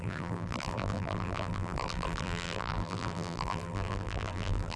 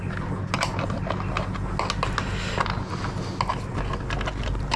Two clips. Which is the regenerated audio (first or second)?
first